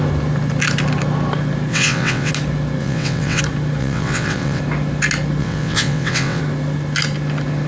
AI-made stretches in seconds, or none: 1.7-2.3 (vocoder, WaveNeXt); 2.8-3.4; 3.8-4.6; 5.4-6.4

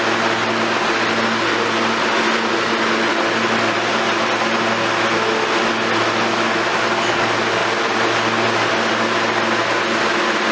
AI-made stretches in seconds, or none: none

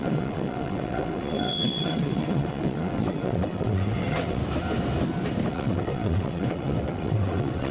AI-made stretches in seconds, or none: 0.0-4.4 (vocoder, WaveNeXt); 5.5-7.7

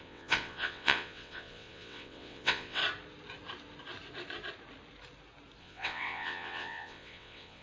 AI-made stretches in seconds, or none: 0.0-2.8 (vocoder, WaveNeXt); 5.6-7.6

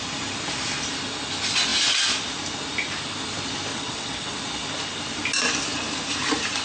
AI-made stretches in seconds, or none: 3.7-4.4 (vocoder, WaveNeXt)

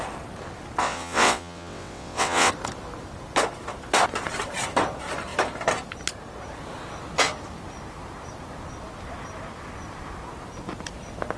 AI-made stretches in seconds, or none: 0.8-2.5 (vocoder, WaveNeXt)

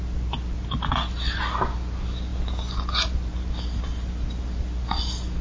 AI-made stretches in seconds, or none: none

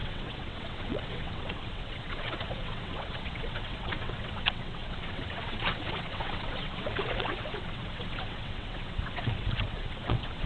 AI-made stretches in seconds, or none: 0.0-10.5 (vocoder, WaveNeXt)